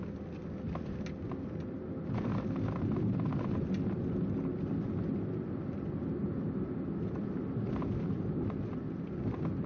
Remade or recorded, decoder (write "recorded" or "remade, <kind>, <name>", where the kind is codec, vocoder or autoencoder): recorded